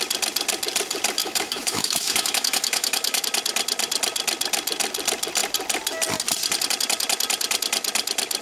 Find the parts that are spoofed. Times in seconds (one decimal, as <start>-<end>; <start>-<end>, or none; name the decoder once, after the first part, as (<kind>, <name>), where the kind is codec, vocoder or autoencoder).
1.2-3.2 (autoencoder, DAC-VAE)